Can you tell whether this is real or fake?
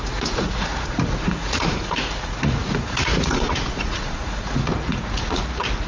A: fake